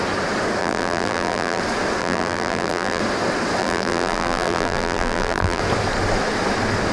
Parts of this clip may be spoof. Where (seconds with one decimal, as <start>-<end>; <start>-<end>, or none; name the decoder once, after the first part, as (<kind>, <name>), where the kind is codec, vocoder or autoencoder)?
0.6-1.6 (vocoder, BigVGAN v2); 2.0-3.0; 3.6-5.6

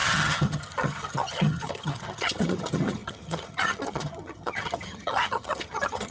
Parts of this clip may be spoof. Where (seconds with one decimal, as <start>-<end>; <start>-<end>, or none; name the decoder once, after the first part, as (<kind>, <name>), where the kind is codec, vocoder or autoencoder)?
0.0-6.1 (vocoder, HiFi-GAN)